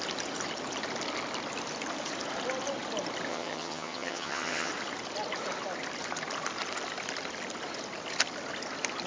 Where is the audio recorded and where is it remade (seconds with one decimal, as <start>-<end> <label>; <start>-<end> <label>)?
0.0-3.3 recorded; 3.3-4.7 remade; 4.7-9.1 recorded